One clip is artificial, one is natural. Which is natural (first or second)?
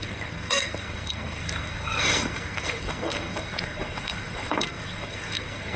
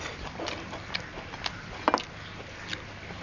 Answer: second